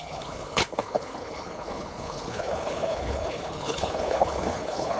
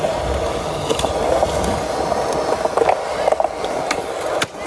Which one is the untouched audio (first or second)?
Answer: second